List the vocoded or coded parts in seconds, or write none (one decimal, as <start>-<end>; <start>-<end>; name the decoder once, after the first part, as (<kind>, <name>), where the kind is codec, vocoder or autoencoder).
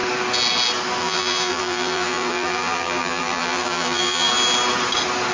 1.0-4.3 (vocoder, BigVGAN v2)